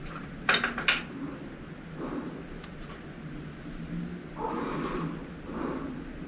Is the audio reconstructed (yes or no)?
no